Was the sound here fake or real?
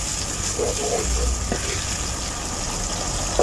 real